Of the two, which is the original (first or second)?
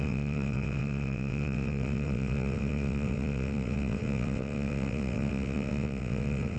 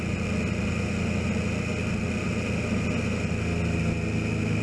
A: second